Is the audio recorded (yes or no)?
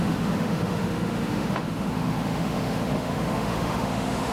no